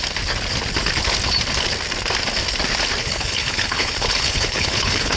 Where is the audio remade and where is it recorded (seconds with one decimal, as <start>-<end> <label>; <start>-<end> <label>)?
0.0-3.0 recorded; 3.0-5.2 remade